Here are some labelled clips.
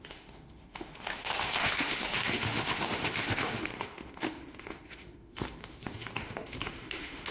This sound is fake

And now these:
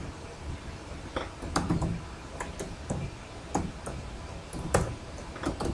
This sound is real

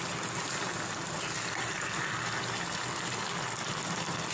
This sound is real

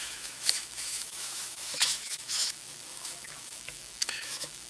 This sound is fake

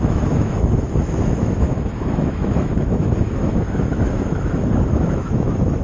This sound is fake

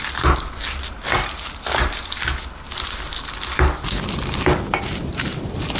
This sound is real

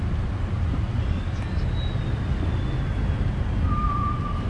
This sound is real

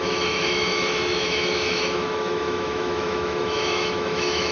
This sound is fake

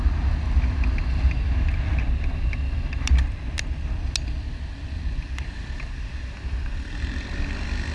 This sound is real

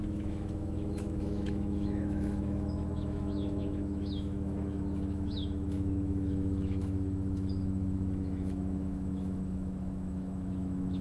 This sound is fake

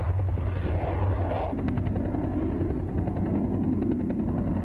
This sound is real